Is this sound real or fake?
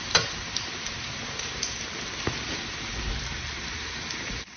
fake